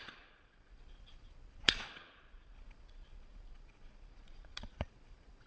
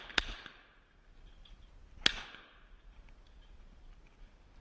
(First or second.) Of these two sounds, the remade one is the first